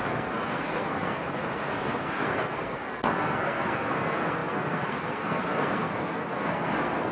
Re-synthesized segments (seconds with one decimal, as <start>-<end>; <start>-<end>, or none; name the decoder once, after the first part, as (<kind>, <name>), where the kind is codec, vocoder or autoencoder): 0.0-7.1 (codec, SNAC)